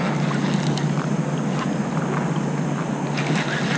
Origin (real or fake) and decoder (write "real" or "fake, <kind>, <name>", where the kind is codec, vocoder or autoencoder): real